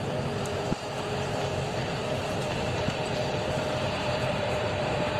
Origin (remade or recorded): remade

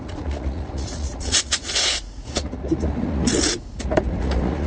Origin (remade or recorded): remade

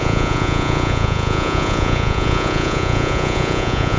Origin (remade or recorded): remade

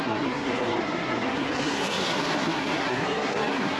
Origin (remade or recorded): remade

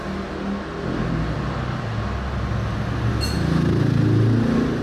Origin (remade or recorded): recorded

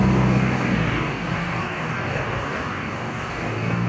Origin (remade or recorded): remade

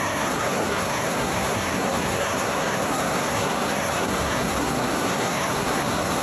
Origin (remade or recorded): remade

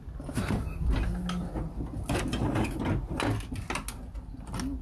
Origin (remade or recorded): recorded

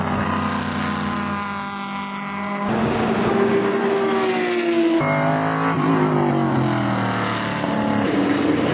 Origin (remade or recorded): recorded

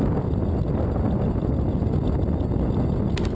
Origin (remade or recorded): recorded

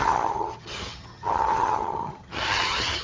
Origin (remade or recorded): remade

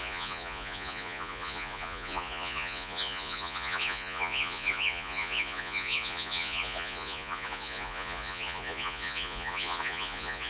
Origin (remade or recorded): remade